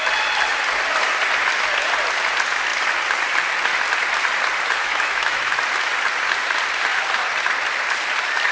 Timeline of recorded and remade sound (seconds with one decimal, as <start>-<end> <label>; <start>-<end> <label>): 0.0-4.8 recorded; 4.8-5.4 remade; 5.4-8.5 recorded